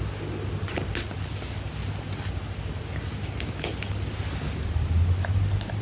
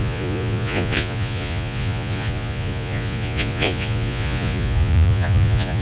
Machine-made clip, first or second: second